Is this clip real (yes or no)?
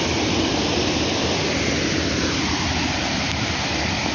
yes